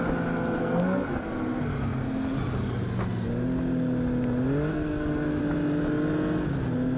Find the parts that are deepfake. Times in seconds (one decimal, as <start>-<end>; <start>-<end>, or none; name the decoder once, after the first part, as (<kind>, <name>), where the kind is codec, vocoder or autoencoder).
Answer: 0.6-1.2 (codec, SNAC); 4.7-5.4